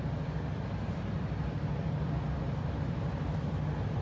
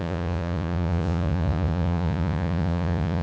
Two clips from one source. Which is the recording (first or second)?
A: first